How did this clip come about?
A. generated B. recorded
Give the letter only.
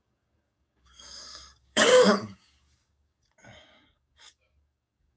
A